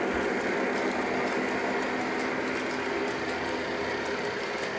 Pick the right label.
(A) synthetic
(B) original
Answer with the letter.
B